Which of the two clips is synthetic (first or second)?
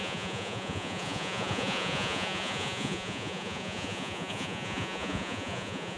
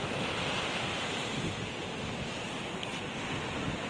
first